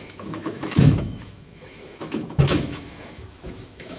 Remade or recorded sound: remade